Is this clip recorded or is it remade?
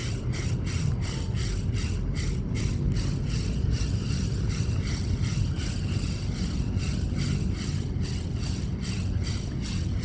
recorded